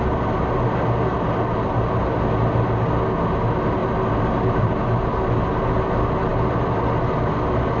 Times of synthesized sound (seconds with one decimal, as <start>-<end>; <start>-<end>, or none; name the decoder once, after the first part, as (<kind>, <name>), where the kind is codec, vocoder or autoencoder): 1.1-2.0 (vocoder, BigVGAN v2); 3.8-4.8